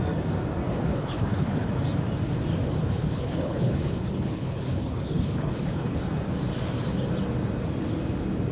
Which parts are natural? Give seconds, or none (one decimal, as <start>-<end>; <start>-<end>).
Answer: 0.0-0.7; 1.7-2.7; 6.0-8.5